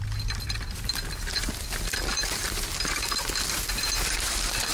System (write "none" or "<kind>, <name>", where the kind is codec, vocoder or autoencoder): vocoder, BigVGAN v2